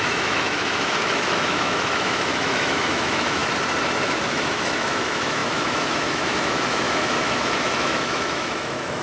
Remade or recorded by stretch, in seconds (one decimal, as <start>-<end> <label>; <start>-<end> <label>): 0.0-3.4 remade; 3.4-4.0 recorded; 4.0-9.0 remade

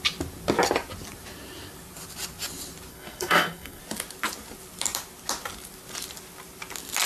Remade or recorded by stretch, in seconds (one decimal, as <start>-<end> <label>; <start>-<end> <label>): 0.0-2.9 recorded; 2.9-3.8 remade; 3.8-7.1 recorded

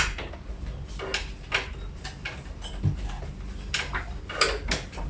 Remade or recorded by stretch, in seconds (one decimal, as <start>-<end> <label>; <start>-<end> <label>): 0.0-5.1 recorded

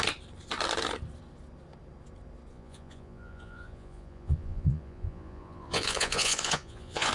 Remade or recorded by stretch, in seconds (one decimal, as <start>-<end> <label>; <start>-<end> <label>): 0.0-2.5 recorded; 2.5-7.1 remade